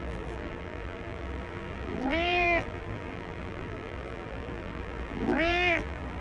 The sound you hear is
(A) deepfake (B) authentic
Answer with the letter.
A